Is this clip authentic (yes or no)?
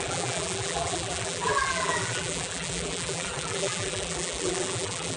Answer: no